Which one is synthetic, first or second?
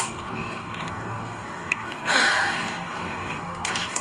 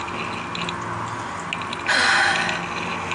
first